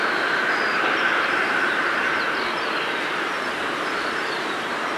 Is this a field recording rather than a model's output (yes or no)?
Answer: no